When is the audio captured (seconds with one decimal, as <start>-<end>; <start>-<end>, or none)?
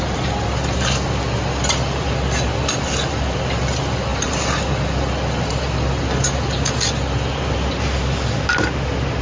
0.0-9.2